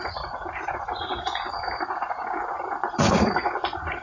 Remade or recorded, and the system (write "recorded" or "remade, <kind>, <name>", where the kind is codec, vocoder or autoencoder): remade, vocoder, Vocos